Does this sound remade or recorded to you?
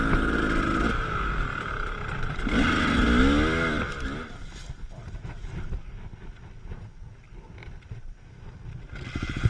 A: recorded